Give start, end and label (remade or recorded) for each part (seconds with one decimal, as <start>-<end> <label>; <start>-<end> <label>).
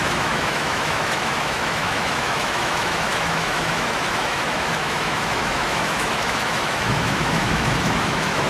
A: 0.0-8.5 remade